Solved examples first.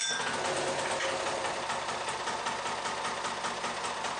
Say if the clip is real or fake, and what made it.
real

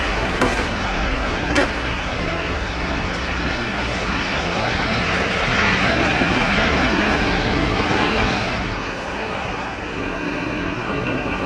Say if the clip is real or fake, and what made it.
fake, codec, SNAC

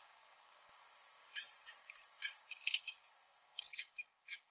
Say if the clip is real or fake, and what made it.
fake, codec, DAC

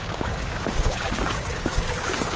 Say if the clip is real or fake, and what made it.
fake, codec, DAC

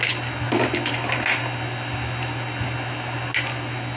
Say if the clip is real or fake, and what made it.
real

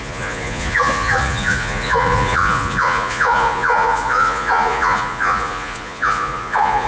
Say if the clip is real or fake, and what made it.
fake, vocoder, Vocos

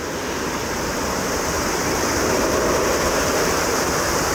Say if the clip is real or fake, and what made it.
fake, vocoder, BigVGAN v2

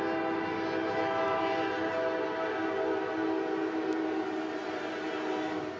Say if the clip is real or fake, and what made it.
real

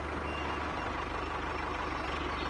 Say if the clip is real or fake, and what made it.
real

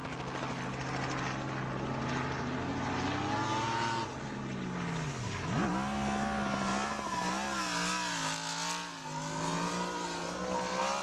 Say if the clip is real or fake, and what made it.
real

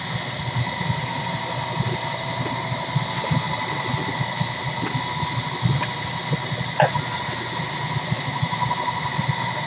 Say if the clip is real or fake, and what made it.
real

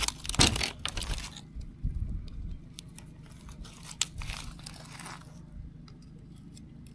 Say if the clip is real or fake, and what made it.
real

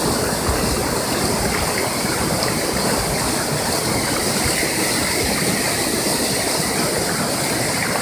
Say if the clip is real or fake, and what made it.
real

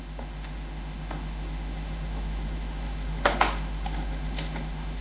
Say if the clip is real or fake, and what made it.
fake, autoencoder, DAC-VAE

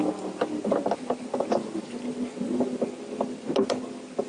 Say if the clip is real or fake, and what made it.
real